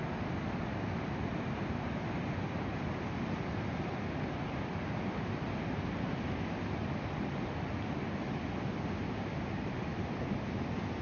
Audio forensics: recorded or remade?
recorded